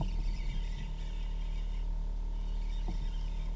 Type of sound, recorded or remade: recorded